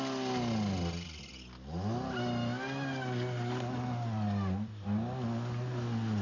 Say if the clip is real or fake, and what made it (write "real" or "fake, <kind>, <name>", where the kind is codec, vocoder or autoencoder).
real